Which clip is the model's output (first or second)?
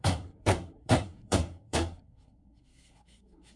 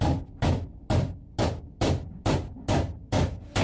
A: first